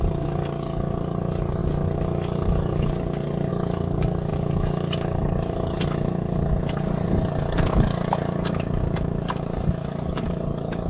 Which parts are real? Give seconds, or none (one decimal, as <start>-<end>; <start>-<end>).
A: none